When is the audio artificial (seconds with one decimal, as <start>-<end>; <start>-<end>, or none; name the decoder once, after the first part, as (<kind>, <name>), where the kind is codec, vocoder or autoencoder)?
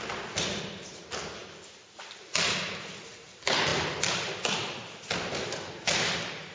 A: none